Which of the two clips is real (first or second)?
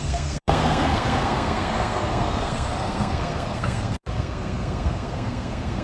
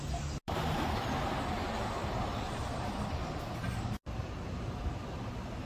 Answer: second